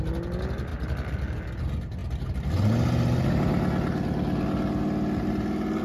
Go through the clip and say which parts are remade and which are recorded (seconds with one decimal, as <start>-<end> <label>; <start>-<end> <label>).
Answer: 0.0-5.8 recorded